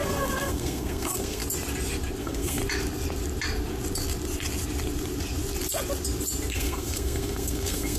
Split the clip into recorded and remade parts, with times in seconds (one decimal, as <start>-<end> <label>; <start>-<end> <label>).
0.0-1.4 remade; 1.4-2.2 recorded; 2.2-2.6 remade; 2.6-6.5 recorded; 6.5-8.0 remade